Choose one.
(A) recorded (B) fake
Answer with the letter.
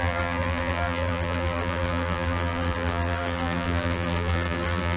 B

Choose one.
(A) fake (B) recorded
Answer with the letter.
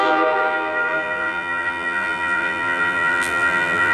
A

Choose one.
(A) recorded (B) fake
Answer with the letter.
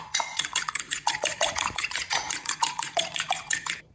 B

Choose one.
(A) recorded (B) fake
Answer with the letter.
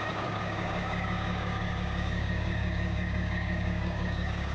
B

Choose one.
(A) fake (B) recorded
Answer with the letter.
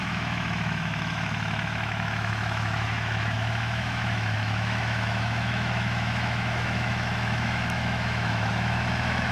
A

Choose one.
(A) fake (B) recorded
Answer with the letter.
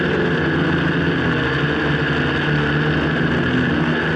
B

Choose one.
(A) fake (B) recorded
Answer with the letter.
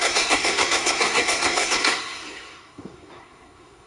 A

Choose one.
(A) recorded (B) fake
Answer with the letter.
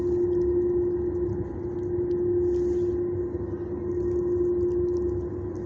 A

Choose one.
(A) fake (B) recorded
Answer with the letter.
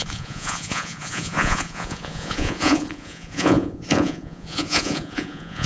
A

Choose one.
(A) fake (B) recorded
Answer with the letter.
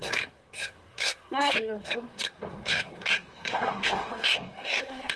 A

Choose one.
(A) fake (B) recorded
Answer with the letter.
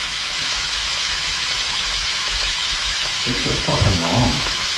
A